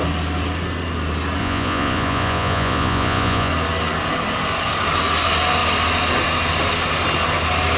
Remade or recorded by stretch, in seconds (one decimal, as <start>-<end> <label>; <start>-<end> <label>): 0.0-1.4 recorded; 1.4-3.5 remade; 3.5-7.8 recorded